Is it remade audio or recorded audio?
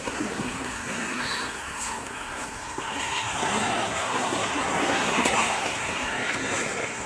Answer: remade